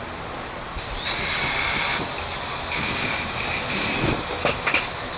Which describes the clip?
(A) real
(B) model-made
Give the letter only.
A